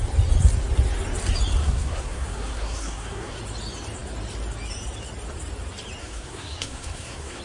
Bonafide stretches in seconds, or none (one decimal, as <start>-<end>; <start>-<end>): 0.0-1.6; 3.4-6.0